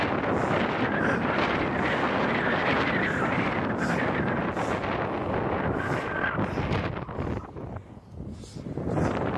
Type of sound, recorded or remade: recorded